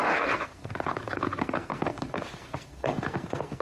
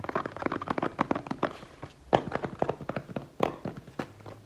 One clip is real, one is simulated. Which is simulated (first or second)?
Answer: first